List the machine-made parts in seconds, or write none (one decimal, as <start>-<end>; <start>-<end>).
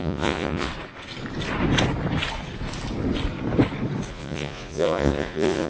0.0-0.7; 4.1-5.7